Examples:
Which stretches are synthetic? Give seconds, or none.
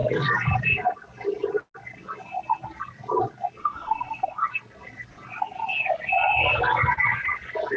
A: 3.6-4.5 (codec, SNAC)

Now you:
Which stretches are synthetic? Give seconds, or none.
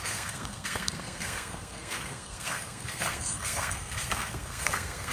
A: 0.0-5.1 (codec, SNAC)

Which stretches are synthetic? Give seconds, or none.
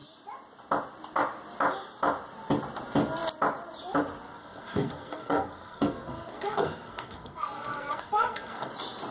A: 4.4-8.7 (codec, SNAC)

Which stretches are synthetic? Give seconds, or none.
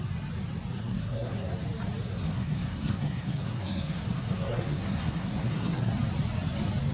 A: 0.8-1.5 (codec, SNAC); 2.0-5.9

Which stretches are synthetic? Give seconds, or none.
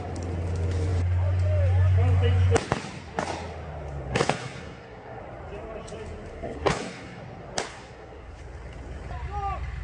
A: 4.1-5.2 (codec, SNAC); 6.3-7.2; 7.7-8.4